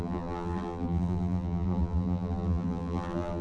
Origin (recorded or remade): remade